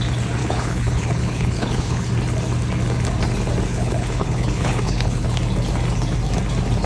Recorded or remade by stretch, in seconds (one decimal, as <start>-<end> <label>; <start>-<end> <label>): 0.0-0.4 recorded; 0.4-2.1 remade; 2.1-3.7 recorded; 3.7-5.4 remade; 5.4-6.9 recorded